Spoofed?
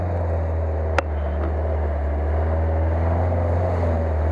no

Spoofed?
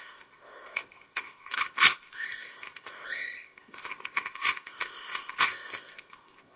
yes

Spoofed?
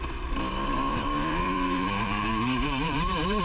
yes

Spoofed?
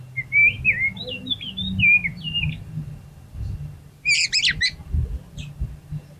no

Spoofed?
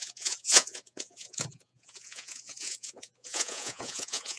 yes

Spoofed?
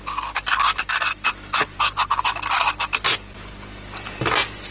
no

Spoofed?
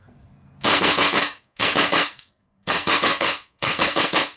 yes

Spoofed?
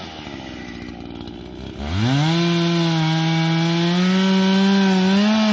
no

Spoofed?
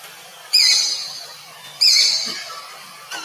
no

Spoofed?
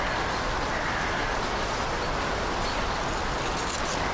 no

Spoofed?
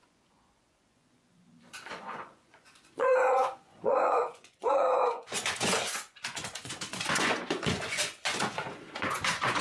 yes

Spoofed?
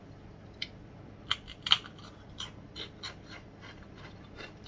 yes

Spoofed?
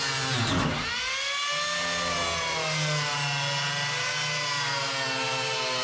no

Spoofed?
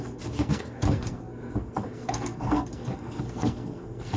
yes